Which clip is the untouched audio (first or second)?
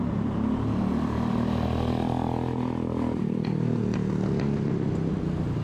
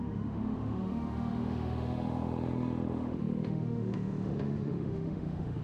first